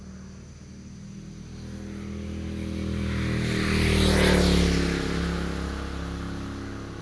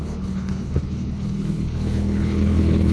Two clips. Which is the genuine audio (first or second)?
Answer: first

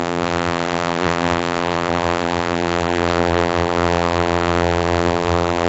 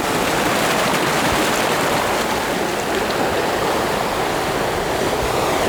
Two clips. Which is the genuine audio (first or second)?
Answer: second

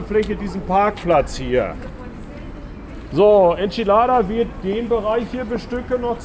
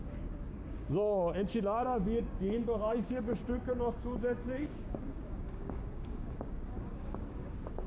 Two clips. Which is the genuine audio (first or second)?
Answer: first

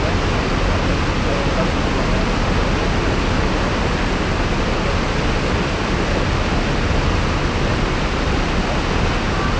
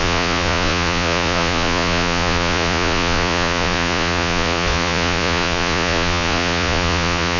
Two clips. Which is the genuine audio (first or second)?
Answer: first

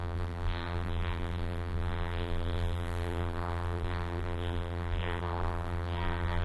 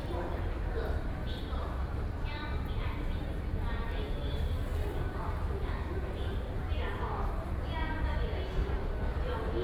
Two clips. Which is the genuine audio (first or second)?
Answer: second